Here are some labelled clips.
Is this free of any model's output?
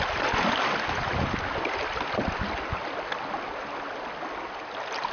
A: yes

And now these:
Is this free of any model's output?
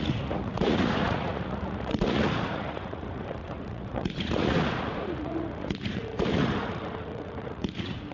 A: no